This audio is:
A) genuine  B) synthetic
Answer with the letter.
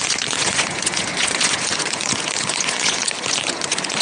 B